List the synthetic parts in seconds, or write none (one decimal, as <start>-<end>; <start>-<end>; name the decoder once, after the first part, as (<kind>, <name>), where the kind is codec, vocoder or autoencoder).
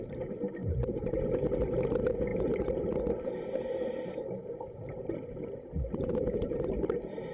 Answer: 0.6-1.3 (vocoder, BigVGAN v2); 2.3-3.0; 4.4-6.7